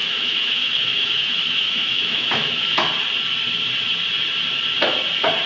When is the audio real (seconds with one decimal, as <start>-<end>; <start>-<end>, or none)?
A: 2.8-5.5